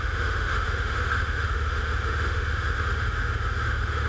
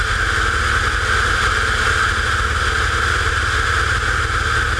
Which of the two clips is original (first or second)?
second